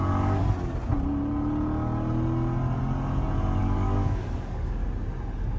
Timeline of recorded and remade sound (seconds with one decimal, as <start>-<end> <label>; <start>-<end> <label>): 0.0-0.4 remade; 0.4-3.6 recorded; 3.6-4.8 remade; 4.8-5.6 recorded

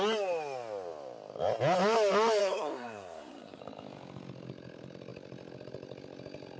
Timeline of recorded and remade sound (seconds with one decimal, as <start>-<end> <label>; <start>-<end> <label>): 0.0-2.4 recorded; 2.4-3.6 remade; 3.6-6.6 recorded

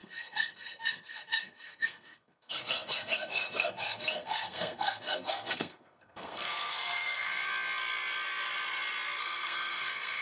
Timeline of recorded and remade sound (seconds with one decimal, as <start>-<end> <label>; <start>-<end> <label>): 0.0-7.4 remade; 7.4-9.2 recorded; 9.2-10.2 remade

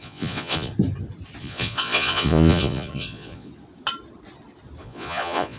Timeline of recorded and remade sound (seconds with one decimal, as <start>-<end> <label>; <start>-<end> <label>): 0.0-0.7 remade; 0.7-1.4 recorded; 1.4-3.5 remade; 3.5-4.8 recorded; 4.8-5.6 remade

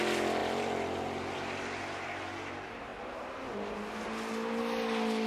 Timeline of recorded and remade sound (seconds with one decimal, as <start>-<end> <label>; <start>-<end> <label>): 0.0-5.3 recorded

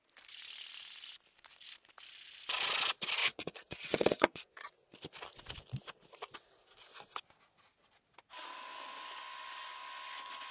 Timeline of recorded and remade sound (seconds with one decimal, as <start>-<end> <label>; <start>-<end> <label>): 0.0-3.2 recorded; 3.2-4.7 remade; 4.7-10.5 recorded

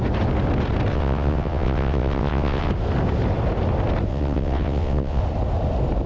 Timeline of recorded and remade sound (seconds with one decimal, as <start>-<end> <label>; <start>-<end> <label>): 0.0-0.9 recorded; 0.9-2.7 remade; 2.7-4.1 recorded; 4.1-5.2 remade; 5.2-6.1 recorded

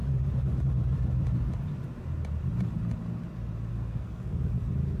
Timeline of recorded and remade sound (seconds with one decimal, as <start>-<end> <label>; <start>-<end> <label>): 0.0-3.7 recorded; 3.7-4.4 remade; 4.4-5.0 recorded